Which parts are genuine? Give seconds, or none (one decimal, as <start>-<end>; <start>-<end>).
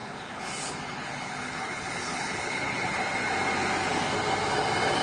3.0-5.0